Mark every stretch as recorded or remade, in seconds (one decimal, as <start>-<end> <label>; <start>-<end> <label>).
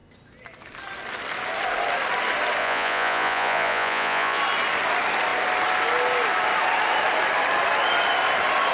0.0-2.6 recorded; 2.6-4.4 remade; 4.4-8.7 recorded